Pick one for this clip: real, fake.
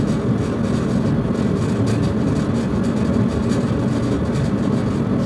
real